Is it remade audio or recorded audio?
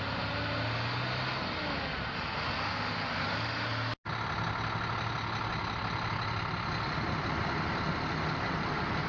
recorded